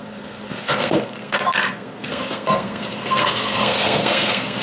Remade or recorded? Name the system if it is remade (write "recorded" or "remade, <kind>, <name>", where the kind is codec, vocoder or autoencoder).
remade, codec, SNAC